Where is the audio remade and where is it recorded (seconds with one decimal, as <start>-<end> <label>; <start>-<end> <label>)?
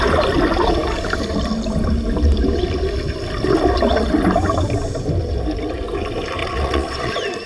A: 0.0-6.4 recorded; 6.4-7.1 remade; 7.1-7.5 recorded